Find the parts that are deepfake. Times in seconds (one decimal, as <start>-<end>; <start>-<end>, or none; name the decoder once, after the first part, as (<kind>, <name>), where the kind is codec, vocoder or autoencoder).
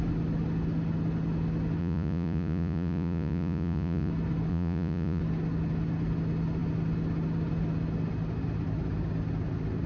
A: 1.8-4.1 (vocoder, Vocos); 4.5-5.2